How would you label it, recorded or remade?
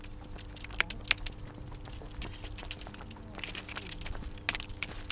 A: recorded